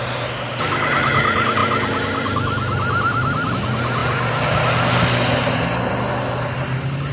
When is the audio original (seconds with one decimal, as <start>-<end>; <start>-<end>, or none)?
0.0-7.1